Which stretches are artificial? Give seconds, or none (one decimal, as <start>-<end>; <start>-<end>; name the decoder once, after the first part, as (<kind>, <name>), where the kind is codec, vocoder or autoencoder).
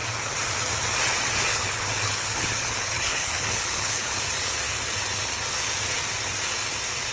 1.5-4.2 (codec, HILCodec)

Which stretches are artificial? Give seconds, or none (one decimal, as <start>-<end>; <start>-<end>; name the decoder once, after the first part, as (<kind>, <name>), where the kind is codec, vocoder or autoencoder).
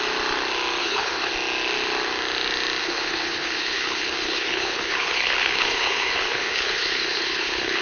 0.8-1.3 (codec, HILCodec); 2.8-7.8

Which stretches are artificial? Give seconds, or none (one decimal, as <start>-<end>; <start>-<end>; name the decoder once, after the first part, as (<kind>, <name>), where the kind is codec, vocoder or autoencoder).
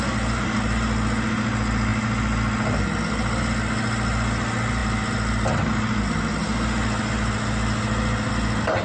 none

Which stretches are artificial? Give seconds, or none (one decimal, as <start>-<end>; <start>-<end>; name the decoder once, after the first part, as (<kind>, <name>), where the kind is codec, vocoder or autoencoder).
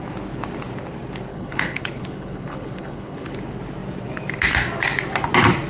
1.3-3.3 (codec, HILCodec)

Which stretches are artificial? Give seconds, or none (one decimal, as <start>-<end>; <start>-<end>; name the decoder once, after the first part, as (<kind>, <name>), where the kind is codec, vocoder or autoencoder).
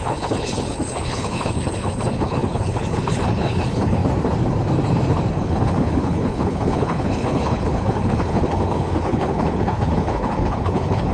0.0-4.0 (codec, HILCodec); 5.3-11.1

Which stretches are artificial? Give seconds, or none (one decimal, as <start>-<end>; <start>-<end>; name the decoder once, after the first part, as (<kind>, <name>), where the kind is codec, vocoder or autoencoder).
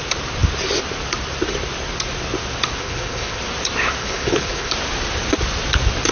2.8-3.4 (codec, HILCodec); 4.0-4.7